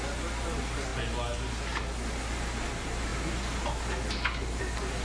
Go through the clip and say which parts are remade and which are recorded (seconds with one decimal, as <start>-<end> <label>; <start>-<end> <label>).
0.0-0.9 recorded; 0.9-1.5 remade; 1.5-5.0 recorded